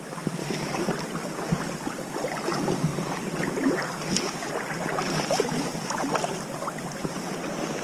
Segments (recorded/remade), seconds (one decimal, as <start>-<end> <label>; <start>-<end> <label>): 0.0-2.9 recorded; 2.9-7.8 remade